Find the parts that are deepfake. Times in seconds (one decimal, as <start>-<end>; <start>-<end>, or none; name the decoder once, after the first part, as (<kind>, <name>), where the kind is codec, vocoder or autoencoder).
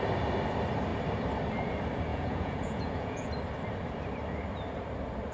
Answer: 2.1-3.3 (vocoder, Vocos)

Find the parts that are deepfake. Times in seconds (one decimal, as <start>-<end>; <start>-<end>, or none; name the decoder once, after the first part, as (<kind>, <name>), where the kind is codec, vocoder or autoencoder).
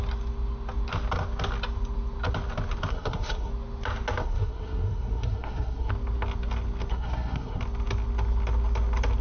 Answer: 2.9-3.5 (codec, SNAC); 4.2-5.9; 6.9-7.6